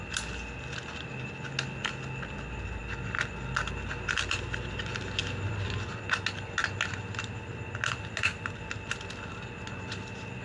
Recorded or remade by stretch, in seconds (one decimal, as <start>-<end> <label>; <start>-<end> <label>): 0.0-10.4 recorded